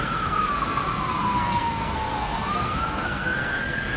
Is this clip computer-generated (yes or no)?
yes